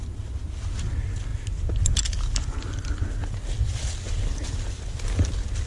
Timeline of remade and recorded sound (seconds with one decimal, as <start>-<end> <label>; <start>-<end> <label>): 0.0-5.7 recorded